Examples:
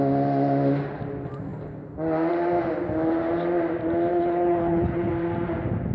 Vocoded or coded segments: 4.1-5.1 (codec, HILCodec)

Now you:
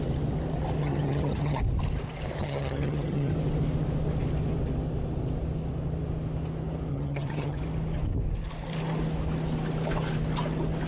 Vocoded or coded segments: 0.8-1.6 (vocoder, HiFi-GAN); 2.4-3.3; 6.9-7.6

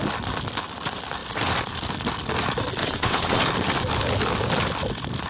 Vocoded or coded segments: 2.8-3.4 (vocoder, WaveNeXt)

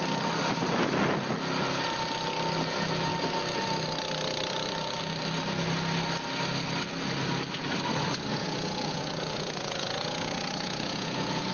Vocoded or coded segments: 8.3-11.5 (vocoder, Vocos)

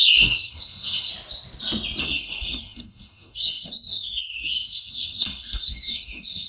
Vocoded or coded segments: 0.0-1.1 (codec, SNAC); 2.0-6.5

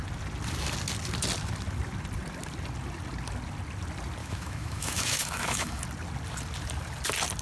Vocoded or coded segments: 4.2-5.8 (autoencoder, DAC-VAE)